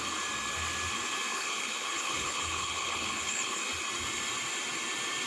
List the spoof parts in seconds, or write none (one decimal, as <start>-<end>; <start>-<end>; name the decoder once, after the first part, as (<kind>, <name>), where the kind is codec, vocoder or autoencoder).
1.3-3.6 (codec, HILCodec)